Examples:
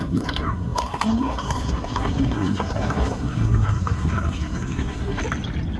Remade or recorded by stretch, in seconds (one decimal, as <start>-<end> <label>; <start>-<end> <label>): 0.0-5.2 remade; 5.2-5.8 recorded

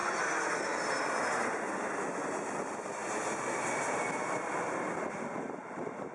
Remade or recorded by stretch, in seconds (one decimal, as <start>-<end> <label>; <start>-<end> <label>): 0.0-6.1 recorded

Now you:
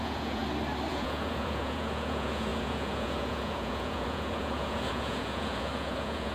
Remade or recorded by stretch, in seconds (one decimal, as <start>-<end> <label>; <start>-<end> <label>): 0.0-0.4 remade; 0.4-0.9 recorded; 0.9-6.3 remade

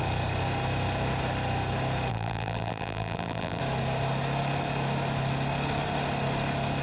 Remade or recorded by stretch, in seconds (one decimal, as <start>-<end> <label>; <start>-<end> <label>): 0.0-2.1 recorded; 2.1-3.6 remade; 3.6-6.8 recorded

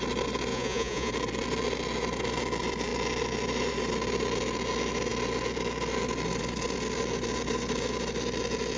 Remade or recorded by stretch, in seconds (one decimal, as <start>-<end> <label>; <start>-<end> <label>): 0.0-0.5 recorded; 0.5-1.1 remade; 1.1-8.8 recorded